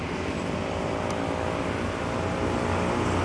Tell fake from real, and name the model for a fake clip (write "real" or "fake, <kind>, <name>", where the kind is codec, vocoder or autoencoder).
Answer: real